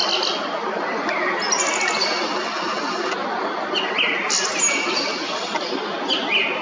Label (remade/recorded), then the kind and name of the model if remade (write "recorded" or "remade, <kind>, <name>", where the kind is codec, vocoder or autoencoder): recorded